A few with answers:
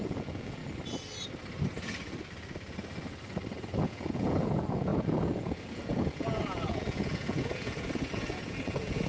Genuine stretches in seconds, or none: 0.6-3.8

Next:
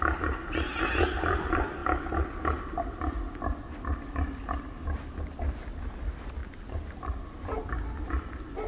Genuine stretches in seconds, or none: 0.0-8.7